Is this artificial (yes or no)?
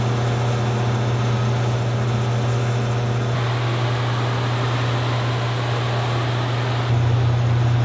no